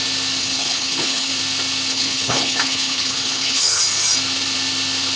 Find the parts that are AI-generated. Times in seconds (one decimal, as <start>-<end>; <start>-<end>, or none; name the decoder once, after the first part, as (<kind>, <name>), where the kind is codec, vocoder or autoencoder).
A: 0.4-1.3 (codec, HILCodec); 1.9-3.8